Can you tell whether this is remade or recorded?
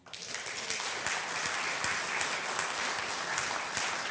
recorded